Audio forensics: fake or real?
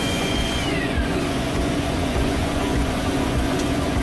fake